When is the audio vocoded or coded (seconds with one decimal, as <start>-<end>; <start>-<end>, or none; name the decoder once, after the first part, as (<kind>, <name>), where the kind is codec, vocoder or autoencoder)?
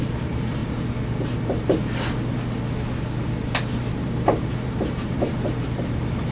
0.0-0.6 (vocoder, BigVGAN v2); 4.0-6.3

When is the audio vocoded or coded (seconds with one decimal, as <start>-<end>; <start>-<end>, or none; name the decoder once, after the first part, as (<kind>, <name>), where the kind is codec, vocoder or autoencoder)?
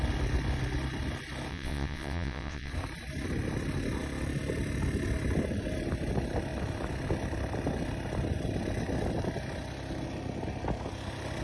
1.5-2.7 (vocoder, WaveNeXt)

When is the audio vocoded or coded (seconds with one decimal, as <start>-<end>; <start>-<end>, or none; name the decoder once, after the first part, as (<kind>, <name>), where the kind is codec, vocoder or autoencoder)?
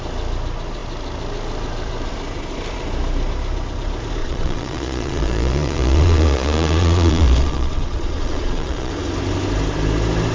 4.2-8.9 (vocoder, Vocos)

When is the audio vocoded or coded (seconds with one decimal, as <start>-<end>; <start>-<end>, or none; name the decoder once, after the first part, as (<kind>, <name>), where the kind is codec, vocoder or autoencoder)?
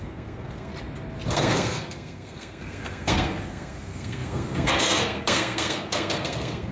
0.0-0.7 (codec, SNAC); 1.3-6.7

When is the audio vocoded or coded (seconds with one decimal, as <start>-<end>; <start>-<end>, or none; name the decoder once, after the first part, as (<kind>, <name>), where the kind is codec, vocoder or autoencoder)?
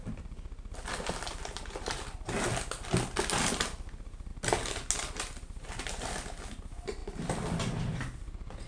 none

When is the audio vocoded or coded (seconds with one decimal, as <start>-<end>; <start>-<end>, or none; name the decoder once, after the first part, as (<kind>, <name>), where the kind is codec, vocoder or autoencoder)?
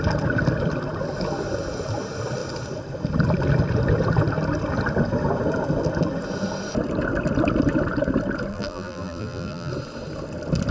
8.5-9.7 (vocoder, BigVGAN v2)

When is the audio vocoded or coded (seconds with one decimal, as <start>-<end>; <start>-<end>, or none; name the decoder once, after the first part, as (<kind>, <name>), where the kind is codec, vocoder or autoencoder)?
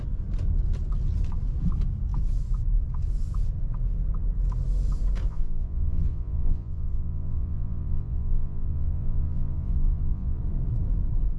5.3-10.4 (vocoder, Vocos)